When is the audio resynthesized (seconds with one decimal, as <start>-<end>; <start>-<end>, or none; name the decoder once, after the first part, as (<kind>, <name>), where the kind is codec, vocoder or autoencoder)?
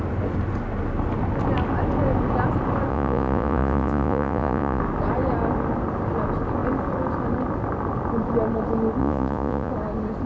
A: 2.9-4.8 (vocoder, Vocos); 9.0-9.7